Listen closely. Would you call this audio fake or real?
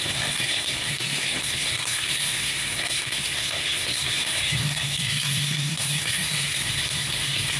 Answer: fake